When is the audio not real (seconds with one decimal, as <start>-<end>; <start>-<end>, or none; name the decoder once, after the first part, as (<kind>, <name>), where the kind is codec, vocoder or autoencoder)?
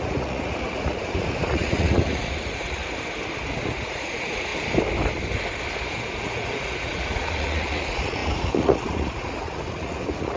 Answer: 0.0-2.8 (vocoder, Vocos); 3.6-4.5; 5.9-10.4